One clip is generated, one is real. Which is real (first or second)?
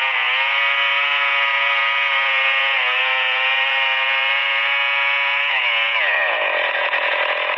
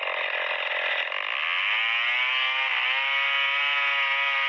second